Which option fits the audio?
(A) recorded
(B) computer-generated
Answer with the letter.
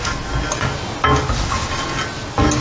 A